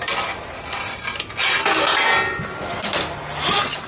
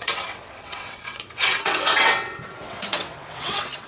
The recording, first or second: first